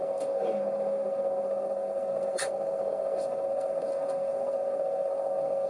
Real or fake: fake